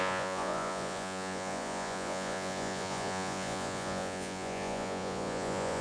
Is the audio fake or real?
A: fake